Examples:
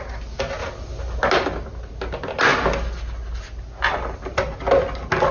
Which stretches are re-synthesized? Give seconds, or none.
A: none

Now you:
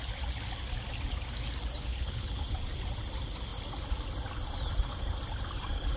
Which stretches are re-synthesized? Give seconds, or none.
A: 1.9-2.4

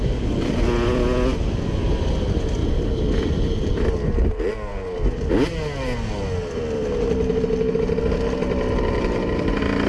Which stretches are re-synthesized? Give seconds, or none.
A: none

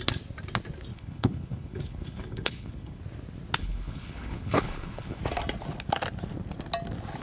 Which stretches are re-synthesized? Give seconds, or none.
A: 0.9-3.0; 3.6-5.2

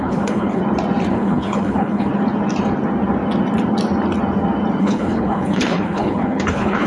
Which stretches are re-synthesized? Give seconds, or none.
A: 0.0-0.6; 1.1-2.1; 4.8-6.9

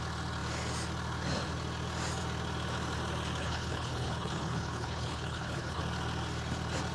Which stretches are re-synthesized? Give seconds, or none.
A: 3.4-5.8